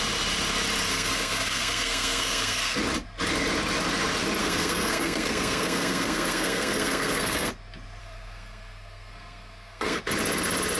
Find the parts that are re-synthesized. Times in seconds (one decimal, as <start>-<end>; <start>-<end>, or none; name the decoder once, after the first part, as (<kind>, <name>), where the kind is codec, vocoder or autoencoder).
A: 0.9-2.8 (codec, SNAC); 4.4-7.5; 8.0-10.0